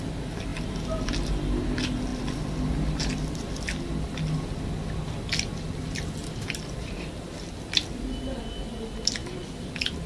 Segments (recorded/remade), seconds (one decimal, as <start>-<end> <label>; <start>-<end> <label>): 0.0-10.1 recorded